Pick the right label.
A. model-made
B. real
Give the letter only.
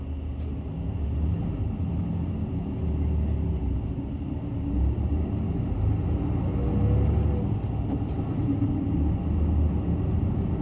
B